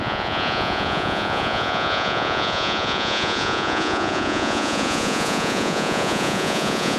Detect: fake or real fake